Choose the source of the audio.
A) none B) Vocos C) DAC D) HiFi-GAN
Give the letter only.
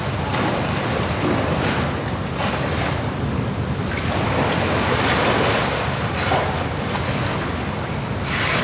A